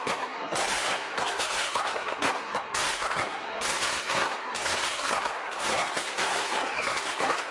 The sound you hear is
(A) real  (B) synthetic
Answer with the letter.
B